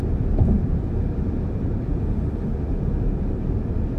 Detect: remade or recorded recorded